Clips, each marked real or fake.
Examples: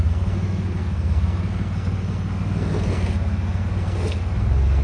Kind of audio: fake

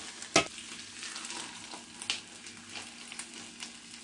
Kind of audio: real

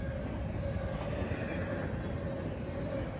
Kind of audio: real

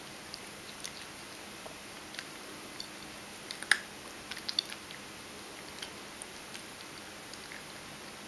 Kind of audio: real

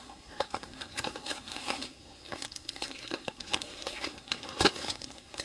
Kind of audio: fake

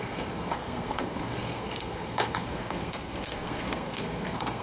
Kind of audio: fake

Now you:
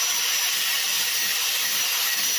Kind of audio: real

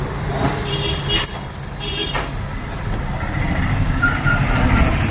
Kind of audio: real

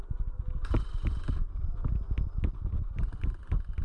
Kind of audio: real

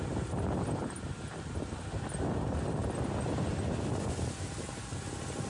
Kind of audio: real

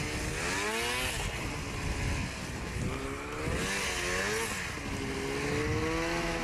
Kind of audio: real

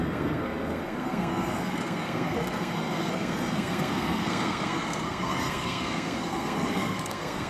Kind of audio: fake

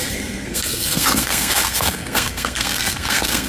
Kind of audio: fake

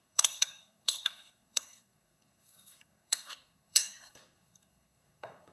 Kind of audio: fake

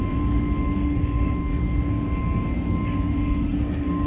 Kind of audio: fake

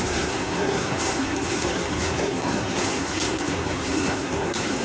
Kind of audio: fake